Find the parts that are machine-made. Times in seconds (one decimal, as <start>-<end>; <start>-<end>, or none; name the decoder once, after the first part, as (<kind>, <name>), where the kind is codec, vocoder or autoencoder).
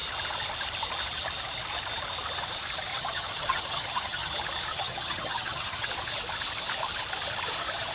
2.9-4.3 (vocoder, HiFi-GAN); 4.7-5.9